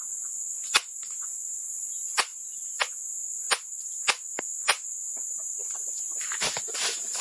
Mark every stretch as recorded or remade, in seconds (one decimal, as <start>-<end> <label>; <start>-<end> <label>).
0.0-2.3 remade; 2.3-4.9 recorded; 4.9-7.2 remade